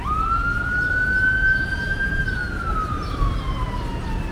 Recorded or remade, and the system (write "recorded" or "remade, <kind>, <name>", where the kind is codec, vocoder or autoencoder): recorded